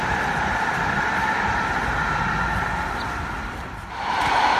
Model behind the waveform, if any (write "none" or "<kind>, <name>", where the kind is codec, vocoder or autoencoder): none